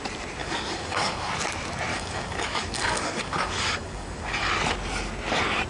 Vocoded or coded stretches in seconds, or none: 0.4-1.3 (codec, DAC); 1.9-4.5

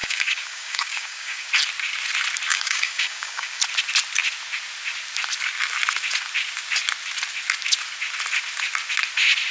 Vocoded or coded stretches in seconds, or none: 0.0-1.5 (codec, DAC); 2.5-3.6